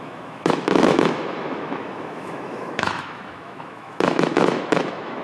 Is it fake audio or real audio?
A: fake